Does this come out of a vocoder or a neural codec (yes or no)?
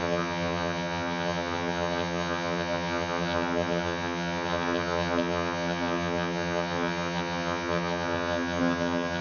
yes